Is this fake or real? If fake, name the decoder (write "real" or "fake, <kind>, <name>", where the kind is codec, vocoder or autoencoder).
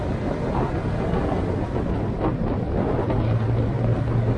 real